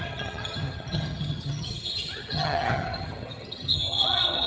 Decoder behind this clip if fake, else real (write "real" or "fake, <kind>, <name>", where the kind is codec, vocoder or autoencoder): fake, vocoder, HiFi-GAN